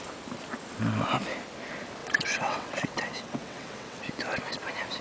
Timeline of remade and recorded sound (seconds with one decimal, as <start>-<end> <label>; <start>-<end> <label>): 0.0-2.0 recorded; 2.0-4.0 remade; 4.0-5.0 recorded